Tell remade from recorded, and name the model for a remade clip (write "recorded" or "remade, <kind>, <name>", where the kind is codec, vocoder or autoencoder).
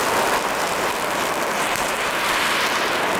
recorded